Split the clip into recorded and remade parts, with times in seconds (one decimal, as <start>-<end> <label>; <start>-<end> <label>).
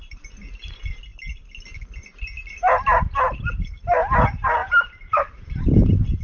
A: 0.0-4.6 recorded; 4.6-5.6 remade; 5.6-6.2 recorded